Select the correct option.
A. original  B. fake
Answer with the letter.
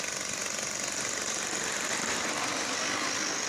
A